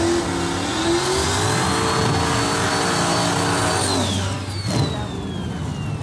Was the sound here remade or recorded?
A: recorded